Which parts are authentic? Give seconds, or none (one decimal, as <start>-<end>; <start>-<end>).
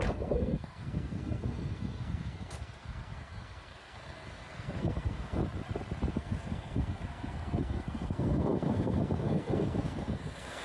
5.4-6.1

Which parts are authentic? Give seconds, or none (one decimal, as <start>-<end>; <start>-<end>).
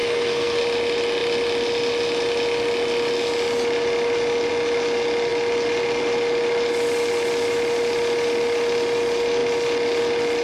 0.6-10.4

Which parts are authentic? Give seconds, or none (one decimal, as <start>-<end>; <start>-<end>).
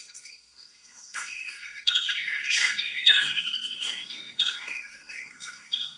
none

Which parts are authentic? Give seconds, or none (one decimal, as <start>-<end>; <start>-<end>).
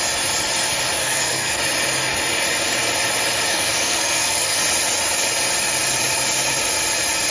0.0-1.0; 1.6-3.5; 4.6-7.3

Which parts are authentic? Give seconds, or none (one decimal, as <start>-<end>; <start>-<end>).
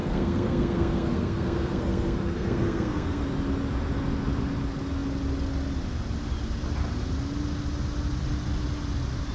3.2-9.3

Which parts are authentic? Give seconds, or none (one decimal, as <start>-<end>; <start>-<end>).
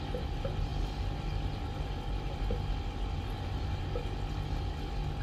0.0-5.2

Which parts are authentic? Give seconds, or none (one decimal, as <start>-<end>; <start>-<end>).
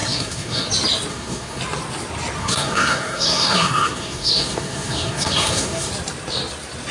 0.7-1.1; 1.6-2.4; 5.9-6.9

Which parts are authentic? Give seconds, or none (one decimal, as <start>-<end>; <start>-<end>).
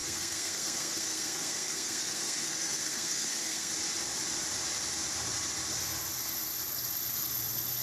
3.7-7.8